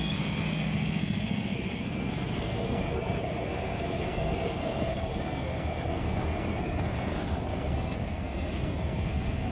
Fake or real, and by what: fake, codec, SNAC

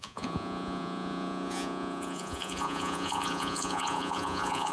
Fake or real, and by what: fake, vocoder, Vocos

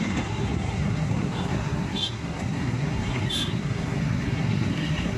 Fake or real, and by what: fake, codec, SNAC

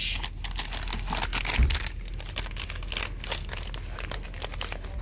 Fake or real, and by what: real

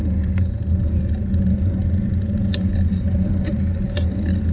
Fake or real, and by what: real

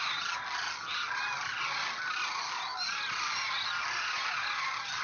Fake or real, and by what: real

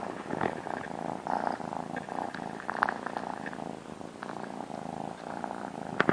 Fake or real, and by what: real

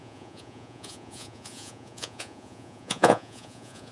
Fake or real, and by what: fake, vocoder, Vocos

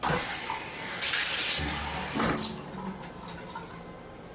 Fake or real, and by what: real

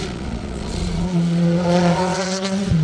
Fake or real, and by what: fake, vocoder, Vocos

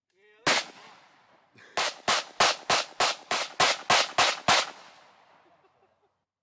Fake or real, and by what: real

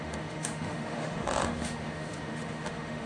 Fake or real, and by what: fake, autoencoder, DAC-VAE